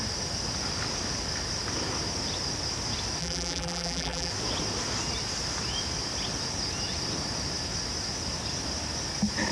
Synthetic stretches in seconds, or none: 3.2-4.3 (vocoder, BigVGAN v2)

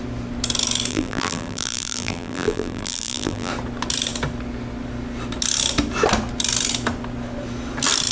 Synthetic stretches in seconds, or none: 0.9-3.5 (vocoder, BigVGAN v2)

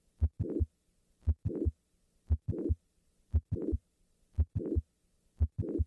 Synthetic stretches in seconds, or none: 2.6-4.5 (vocoder, BigVGAN v2)

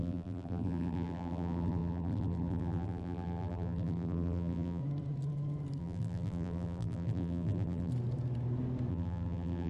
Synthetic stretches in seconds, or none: 0.0-4.8 (vocoder, BigVGAN v2); 5.8-7.9; 8.9-9.7

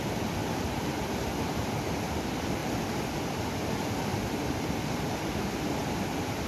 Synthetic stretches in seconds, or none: 0.4-1.7 (vocoder, BigVGAN v2); 2.6-3.1; 4.1-4.9; 5.8-6.5